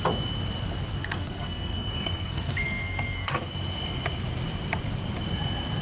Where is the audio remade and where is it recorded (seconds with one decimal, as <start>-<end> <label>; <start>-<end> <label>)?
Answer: 0.0-1.0 recorded; 1.0-3.3 remade; 3.3-5.8 recorded